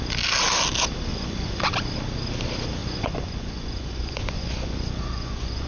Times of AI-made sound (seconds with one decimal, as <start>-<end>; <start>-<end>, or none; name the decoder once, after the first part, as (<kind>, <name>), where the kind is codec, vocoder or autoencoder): 1.1-1.7 (vocoder, Vocos); 2.8-5.7